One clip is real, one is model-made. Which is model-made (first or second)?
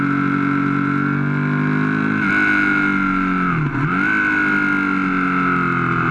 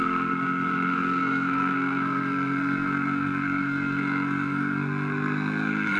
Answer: second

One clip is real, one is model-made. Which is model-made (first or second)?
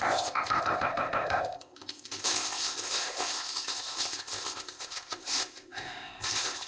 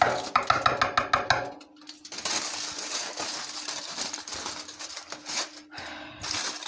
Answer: first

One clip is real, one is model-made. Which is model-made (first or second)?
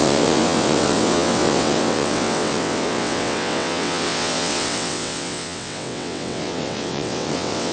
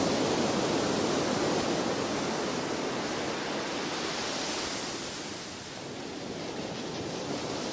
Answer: first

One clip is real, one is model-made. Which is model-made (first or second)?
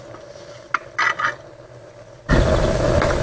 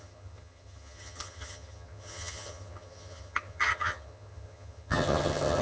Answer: second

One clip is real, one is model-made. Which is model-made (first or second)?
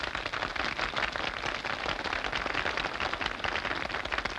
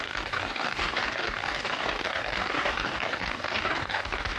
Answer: second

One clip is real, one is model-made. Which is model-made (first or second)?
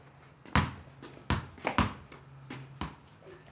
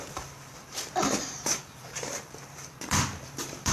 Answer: second